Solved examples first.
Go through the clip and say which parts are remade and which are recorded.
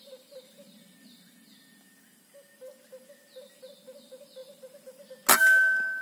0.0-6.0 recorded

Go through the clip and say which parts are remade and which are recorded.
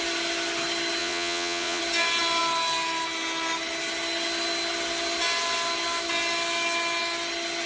0.0-1.0 recorded; 1.0-1.8 remade; 1.8-7.7 recorded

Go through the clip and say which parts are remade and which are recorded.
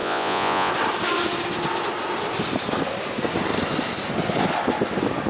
0.0-0.7 remade; 0.7-5.3 recorded